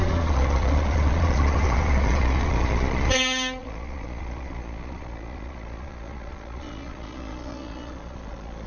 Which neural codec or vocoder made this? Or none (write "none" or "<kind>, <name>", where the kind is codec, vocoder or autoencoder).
vocoder, Vocos